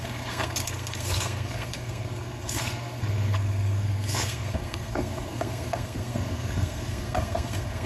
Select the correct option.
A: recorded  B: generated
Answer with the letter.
B